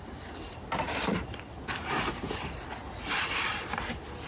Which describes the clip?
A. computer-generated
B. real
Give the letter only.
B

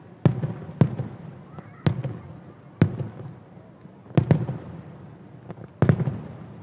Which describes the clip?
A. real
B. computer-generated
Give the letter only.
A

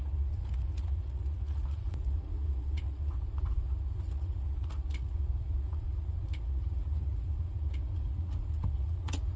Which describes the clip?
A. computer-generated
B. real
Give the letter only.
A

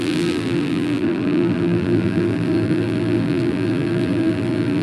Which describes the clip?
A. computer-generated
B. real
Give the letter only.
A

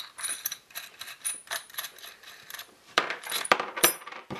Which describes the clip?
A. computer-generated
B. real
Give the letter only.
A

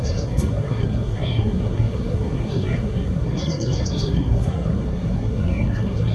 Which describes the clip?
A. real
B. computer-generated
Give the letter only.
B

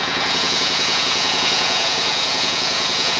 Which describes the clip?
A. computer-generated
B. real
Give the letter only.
A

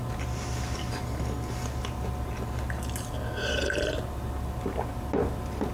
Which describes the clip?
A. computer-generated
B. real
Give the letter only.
B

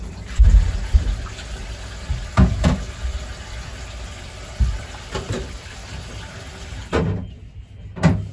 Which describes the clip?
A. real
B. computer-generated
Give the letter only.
A